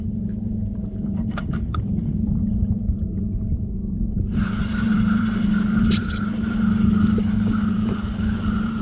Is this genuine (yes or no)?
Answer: no